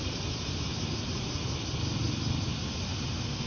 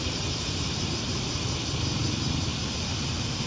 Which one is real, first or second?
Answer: first